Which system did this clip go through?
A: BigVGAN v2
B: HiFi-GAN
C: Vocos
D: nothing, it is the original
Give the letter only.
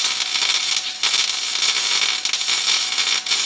D